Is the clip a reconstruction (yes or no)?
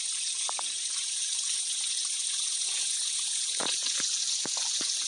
yes